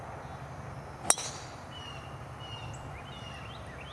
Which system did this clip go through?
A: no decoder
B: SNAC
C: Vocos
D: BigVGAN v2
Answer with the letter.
A